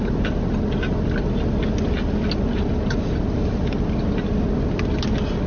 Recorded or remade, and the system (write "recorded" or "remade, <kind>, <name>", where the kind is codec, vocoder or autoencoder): recorded